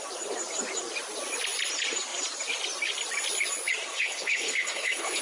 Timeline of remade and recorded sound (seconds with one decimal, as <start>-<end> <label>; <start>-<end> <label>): 0.0-3.9 recorded; 3.9-5.2 remade

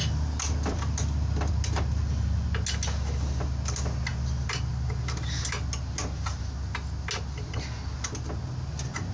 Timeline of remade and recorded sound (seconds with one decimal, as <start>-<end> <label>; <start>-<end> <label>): 0.0-1.5 remade; 1.5-4.1 recorded; 4.1-4.7 remade; 4.7-9.1 recorded

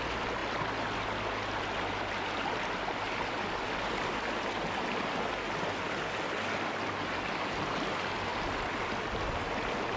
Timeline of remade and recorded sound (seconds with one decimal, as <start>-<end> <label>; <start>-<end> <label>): 0.0-10.0 recorded

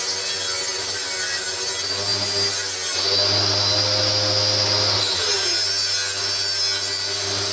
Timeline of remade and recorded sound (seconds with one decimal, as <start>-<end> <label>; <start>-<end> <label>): 0.0-7.5 recorded

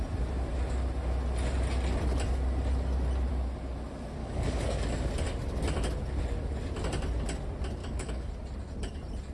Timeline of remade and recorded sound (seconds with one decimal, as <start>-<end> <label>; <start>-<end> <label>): 0.0-4.2 recorded; 4.2-5.1 remade; 5.1-7.8 recorded; 7.8-8.3 remade; 8.3-9.3 recorded

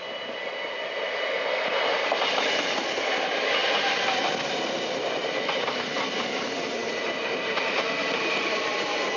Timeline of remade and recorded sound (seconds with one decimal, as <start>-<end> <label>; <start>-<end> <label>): 0.0-9.2 recorded

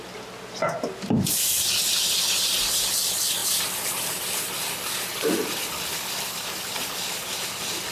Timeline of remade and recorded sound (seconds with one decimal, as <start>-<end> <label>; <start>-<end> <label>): 0.0-7.9 recorded